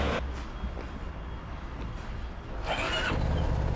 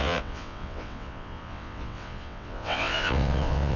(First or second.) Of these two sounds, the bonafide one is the first